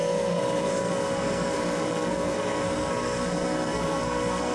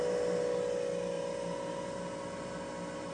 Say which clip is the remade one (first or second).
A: first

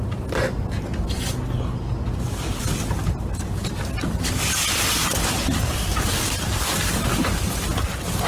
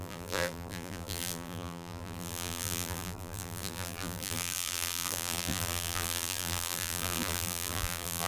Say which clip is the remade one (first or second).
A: second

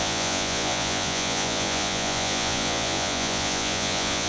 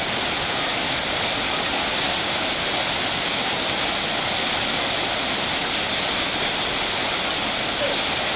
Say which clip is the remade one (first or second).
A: first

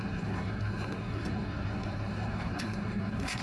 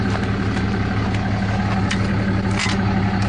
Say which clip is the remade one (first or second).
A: first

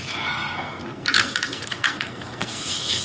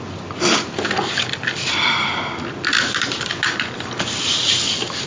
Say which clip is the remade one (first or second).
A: first